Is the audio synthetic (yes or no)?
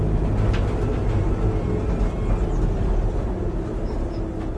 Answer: no